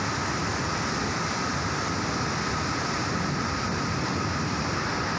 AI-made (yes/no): no